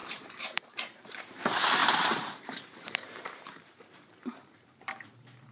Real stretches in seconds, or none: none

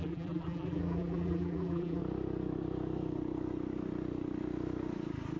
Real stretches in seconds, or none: 2.0-5.4

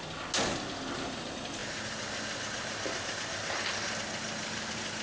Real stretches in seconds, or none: 0.0-5.0

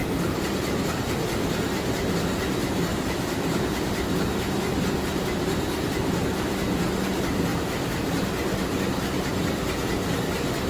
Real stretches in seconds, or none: 1.0-2.9; 5.0-10.7